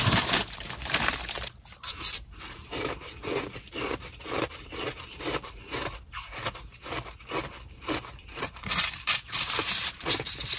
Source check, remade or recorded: remade